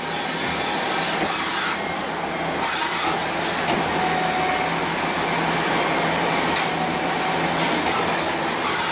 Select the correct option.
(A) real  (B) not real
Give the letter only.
A